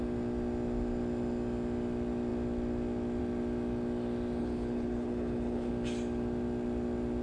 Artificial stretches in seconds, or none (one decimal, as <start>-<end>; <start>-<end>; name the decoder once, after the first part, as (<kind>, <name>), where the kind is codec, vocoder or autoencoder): 4.4-5.7 (codec, HILCodec)